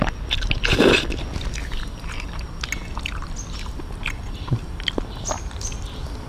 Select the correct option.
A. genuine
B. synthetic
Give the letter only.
A